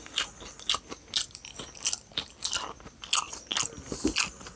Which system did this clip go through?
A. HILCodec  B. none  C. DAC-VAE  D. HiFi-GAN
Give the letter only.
B